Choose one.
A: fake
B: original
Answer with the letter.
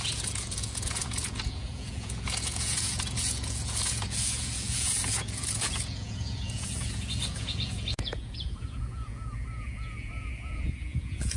A